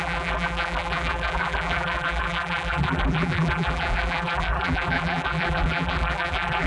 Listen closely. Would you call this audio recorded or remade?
remade